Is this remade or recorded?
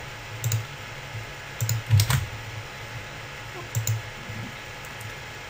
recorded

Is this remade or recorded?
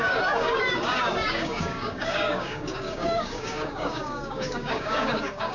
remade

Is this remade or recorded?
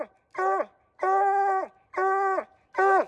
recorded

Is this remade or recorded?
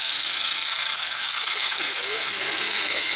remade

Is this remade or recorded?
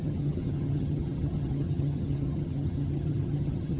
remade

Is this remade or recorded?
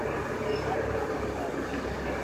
remade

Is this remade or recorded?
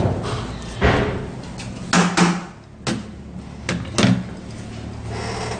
recorded